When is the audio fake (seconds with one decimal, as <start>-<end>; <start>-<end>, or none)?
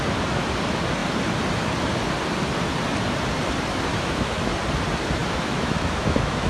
3.9-4.5; 5.2-6.5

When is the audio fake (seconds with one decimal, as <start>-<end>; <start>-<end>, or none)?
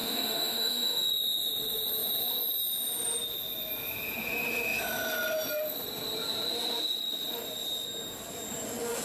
0.0-1.1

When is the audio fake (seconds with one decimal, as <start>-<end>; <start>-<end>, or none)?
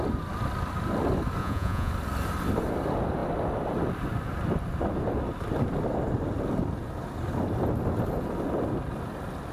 1.4-1.9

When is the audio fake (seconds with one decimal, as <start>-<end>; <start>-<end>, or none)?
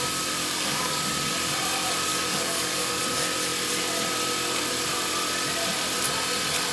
0.4-1.0; 2.1-3.0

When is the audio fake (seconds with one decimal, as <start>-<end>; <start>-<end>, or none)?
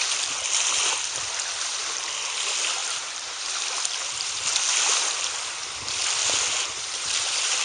2.8-3.5; 6.2-7.6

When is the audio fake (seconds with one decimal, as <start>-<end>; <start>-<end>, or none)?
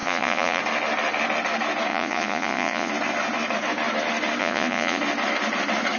0.0-0.6; 1.9-2.9; 4.4-5.0